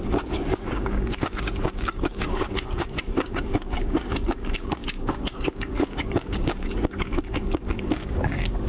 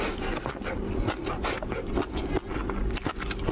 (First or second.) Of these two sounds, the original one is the second